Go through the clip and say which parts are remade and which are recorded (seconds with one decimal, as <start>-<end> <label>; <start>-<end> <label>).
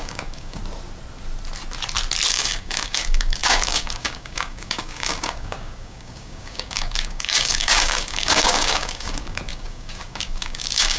0.0-0.6 remade; 0.6-2.3 recorded; 2.3-11.0 remade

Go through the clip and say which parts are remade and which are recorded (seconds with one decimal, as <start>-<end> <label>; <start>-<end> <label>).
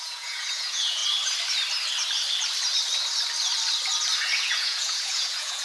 0.0-1.0 remade; 1.0-4.4 recorded; 4.4-5.6 remade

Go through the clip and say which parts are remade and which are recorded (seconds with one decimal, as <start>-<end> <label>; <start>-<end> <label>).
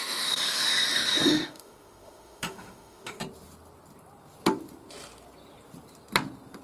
0.0-3.2 remade; 3.2-6.6 recorded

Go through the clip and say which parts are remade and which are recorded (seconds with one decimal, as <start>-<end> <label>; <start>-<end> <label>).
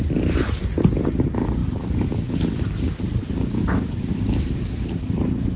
0.0-5.6 recorded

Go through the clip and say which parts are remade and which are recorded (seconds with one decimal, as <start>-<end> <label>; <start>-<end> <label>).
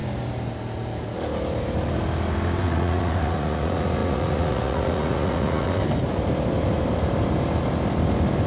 0.0-2.6 recorded; 2.6-5.8 remade; 5.8-8.5 recorded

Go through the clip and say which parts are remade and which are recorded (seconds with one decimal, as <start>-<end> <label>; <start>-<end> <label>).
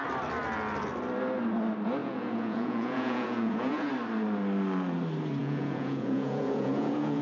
0.0-2.0 recorded; 2.0-3.9 remade; 3.9-5.4 recorded; 5.4-7.2 remade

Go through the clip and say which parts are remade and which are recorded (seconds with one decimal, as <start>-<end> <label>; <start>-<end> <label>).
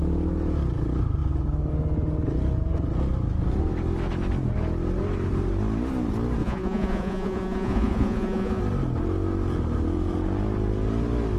0.0-6.4 recorded; 6.4-8.6 remade; 8.6-11.4 recorded